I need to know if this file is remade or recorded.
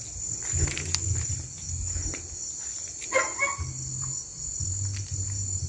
recorded